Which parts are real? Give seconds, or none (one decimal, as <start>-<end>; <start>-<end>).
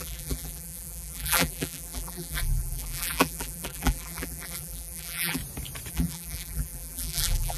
5.4-5.9